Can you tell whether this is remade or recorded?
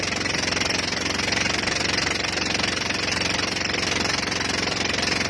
recorded